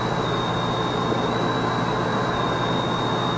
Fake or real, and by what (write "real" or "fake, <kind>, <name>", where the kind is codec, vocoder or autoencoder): real